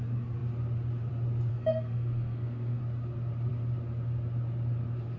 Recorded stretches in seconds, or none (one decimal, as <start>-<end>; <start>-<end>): 0.0-1.5; 2.8-5.2